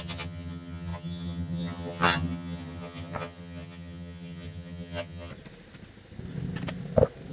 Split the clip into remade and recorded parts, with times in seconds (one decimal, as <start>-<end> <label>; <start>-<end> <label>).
0.0-5.3 remade; 5.3-7.3 recorded